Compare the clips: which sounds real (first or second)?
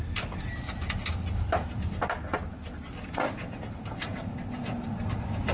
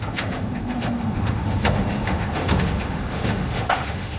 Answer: first